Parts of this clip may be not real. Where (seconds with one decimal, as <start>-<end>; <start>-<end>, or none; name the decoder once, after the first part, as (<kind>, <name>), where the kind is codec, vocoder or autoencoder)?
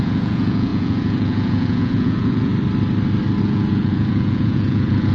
0.0-2.5 (vocoder, Vocos); 3.4-5.1